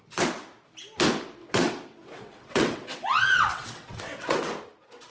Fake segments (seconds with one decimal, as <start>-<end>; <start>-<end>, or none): 1.4-4.5